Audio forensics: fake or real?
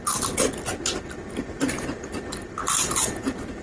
real